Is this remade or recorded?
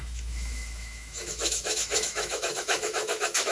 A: remade